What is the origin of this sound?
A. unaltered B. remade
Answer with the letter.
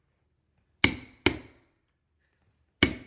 A